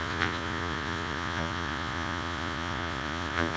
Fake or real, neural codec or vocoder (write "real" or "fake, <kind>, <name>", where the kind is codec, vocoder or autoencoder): fake, vocoder, Vocos